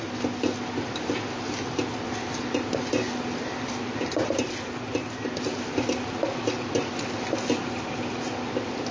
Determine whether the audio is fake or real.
real